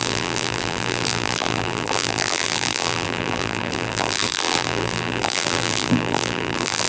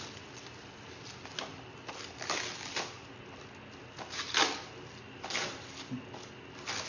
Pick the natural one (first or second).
second